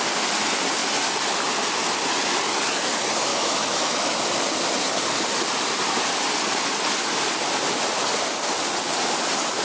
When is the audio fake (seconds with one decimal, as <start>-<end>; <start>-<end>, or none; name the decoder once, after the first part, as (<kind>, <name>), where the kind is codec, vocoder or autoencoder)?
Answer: 3.3-4.2 (autoencoder, DAC-VAE)